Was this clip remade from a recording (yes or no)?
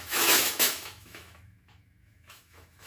yes